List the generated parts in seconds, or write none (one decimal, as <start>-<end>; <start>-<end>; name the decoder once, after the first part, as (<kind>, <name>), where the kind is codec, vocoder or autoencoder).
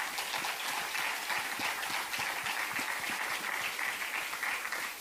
none